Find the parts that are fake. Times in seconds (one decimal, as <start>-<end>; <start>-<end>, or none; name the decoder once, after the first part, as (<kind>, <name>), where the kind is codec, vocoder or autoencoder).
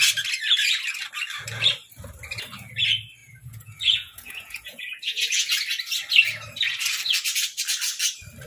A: 3.2-5.5 (vocoder, Vocos)